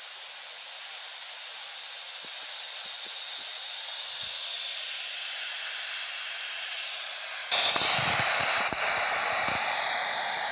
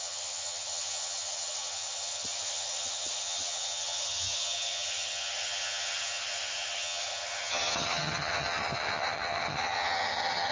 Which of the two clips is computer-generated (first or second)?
second